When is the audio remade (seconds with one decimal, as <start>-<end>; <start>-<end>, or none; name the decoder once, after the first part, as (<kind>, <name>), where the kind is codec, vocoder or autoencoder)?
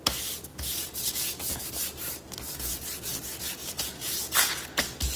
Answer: 0.5-1.7 (vocoder, Vocos); 3.6-4.8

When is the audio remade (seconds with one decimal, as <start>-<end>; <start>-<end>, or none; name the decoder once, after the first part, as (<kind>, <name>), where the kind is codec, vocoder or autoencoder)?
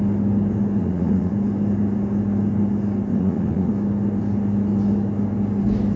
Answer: 0.8-1.3 (vocoder, Vocos); 3.1-3.7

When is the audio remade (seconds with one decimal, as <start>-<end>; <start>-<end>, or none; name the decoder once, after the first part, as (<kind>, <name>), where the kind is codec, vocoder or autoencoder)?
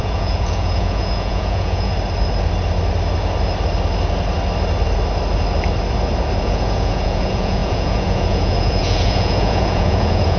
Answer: 0.0-1.9 (vocoder, Vocos); 6.4-10.4